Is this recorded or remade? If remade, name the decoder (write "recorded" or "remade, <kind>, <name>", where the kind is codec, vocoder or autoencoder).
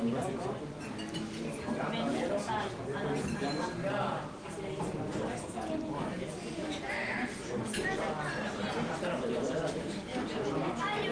recorded